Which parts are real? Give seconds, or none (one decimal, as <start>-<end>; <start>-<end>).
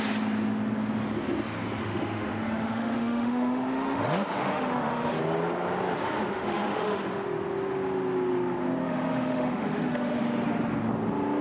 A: 0.0-1.8; 5.2-6.3; 7.0-8.8; 10.2-11.4